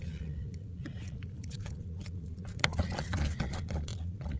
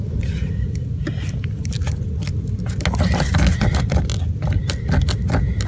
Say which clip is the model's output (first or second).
first